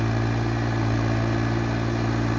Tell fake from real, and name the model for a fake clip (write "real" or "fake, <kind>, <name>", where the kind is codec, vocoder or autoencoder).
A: real